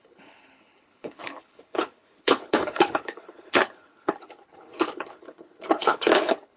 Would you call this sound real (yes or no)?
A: no